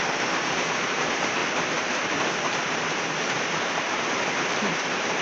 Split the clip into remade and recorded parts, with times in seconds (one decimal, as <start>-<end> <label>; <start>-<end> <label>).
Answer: 0.0-5.2 remade